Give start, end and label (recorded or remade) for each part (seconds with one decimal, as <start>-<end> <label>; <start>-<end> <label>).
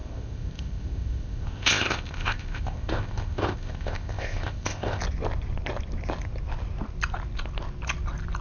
0.0-5.0 remade; 5.0-8.4 recorded